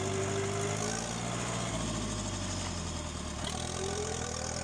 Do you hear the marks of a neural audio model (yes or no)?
no